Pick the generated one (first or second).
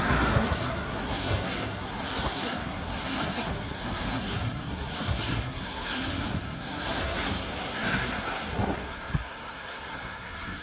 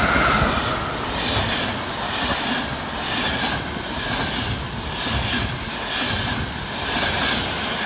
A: first